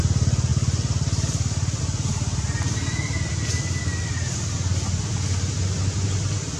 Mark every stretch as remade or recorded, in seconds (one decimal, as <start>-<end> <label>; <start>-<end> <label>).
0.0-6.6 recorded